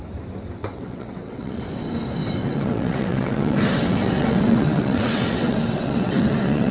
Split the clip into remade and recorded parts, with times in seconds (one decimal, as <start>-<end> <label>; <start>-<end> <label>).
0.0-0.6 recorded; 0.6-1.6 remade; 1.6-2.4 recorded; 2.4-6.7 remade